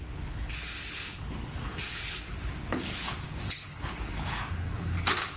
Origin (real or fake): fake